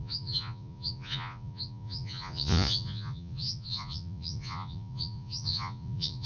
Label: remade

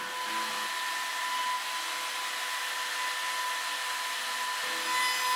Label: recorded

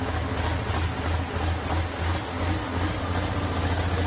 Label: recorded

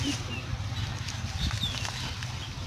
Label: recorded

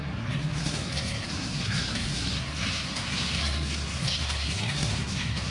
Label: remade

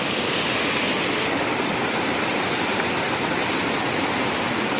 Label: recorded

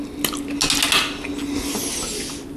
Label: recorded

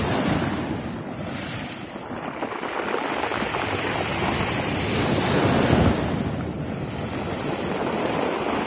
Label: recorded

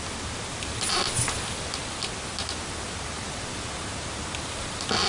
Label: recorded